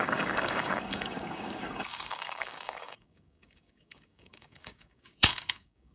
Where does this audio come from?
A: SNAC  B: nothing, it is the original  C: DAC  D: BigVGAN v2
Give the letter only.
C